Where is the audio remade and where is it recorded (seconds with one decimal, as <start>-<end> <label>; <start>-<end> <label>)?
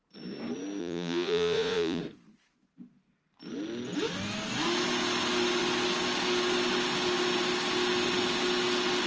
0.0-0.8 recorded; 0.8-2.0 remade; 2.0-9.1 recorded